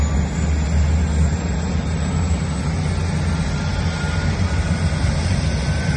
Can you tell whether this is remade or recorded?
recorded